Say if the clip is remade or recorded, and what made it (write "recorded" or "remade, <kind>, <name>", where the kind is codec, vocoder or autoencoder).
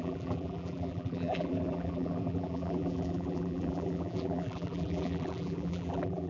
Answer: remade, vocoder, BigVGAN v2